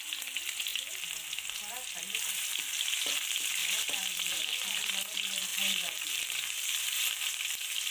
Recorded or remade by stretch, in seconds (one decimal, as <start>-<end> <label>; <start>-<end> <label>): 0.0-3.6 recorded; 3.6-4.9 remade; 4.9-5.5 recorded; 5.5-7.9 remade